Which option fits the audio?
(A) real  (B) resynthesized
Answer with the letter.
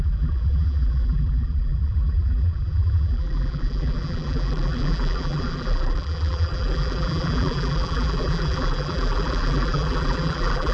B